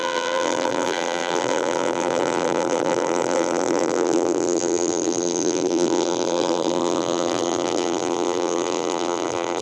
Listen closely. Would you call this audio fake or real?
fake